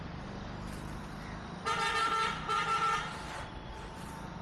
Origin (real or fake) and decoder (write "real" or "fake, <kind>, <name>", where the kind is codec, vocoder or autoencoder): real